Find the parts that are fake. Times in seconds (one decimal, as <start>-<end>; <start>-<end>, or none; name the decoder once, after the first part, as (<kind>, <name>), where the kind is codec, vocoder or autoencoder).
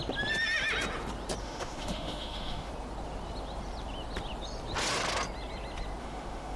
1.4-2.7 (autoencoder, DAC-VAE); 6.0-6.6